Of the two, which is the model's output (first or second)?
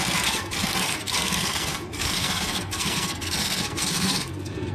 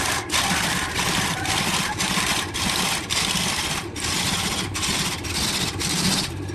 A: first